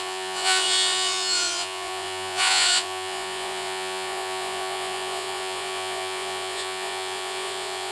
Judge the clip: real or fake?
fake